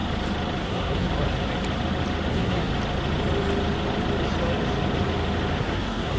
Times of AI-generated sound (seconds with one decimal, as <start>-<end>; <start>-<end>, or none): 0.6-1.1; 2.3-2.7; 5.6-6.2

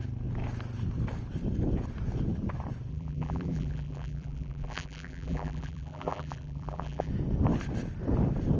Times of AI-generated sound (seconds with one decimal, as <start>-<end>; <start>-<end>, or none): 2.9-7.1

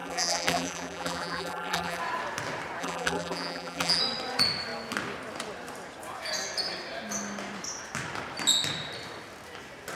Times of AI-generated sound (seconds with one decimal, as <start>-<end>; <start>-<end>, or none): 0.0-2.0; 2.8-4.0

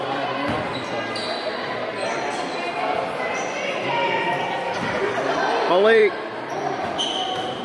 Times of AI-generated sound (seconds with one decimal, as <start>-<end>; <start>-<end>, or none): none

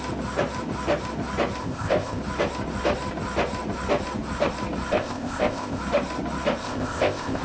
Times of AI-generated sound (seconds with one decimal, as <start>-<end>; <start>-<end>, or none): 1.6-2.2; 4.9-5.8; 6.6-7.4

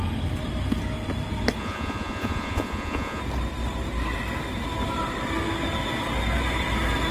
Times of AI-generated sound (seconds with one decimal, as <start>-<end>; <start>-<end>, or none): 1.6-3.2